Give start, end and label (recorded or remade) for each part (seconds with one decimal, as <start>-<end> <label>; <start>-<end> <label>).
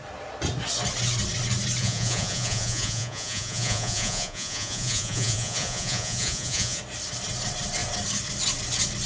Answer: 0.0-1.8 recorded; 1.8-6.8 remade; 6.8-9.1 recorded